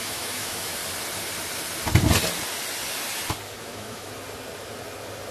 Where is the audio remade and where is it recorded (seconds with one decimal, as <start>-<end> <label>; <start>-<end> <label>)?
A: 0.0-0.8 remade; 0.8-3.6 recorded; 3.6-4.1 remade; 4.1-5.3 recorded